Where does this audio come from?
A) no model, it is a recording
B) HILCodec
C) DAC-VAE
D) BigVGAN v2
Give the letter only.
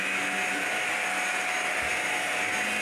A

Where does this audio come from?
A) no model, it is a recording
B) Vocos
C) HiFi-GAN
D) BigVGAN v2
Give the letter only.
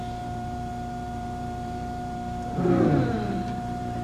D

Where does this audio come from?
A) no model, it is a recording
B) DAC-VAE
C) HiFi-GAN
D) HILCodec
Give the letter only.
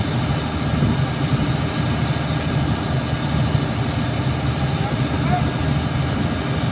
A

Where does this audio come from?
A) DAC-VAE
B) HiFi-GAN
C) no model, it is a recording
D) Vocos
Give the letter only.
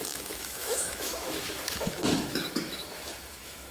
A